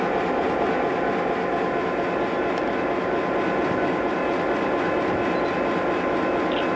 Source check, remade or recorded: recorded